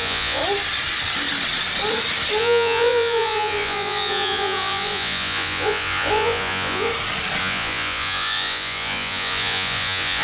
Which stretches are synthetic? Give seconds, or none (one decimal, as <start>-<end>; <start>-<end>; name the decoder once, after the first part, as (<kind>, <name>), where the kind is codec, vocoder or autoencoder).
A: 0.0-0.4 (vocoder, Vocos); 2.4-6.9; 7.4-10.2